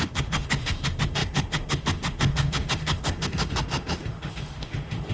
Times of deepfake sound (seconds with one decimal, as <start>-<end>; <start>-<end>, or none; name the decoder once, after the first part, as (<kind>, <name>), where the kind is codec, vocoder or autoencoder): 0.0-5.1 (autoencoder, DAC-VAE)

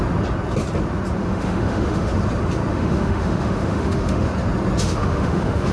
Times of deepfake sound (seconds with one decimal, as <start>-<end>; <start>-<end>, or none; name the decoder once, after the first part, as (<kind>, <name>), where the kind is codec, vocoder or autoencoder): 1.2-2.1 (autoencoder, DAC-VAE); 2.7-4.3; 4.8-5.7

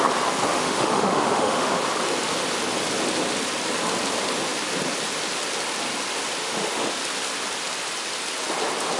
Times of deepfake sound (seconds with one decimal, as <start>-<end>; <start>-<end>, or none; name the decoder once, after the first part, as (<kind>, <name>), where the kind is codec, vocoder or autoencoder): 0.5-1.8 (autoencoder, DAC-VAE); 6.4-6.9

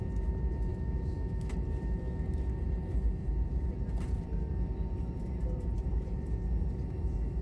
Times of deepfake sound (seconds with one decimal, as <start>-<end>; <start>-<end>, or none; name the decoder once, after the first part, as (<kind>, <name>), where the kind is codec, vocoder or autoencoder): 0.7-1.5 (autoencoder, DAC-VAE)

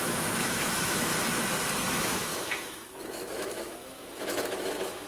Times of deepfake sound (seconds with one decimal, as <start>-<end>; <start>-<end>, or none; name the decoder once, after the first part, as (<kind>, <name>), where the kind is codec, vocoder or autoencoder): 0.0-1.1 (autoencoder, DAC-VAE); 1.9-5.1

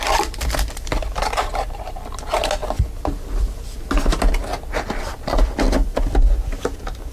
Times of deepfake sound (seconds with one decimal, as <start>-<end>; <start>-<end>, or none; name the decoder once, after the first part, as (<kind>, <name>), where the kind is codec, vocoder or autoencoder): none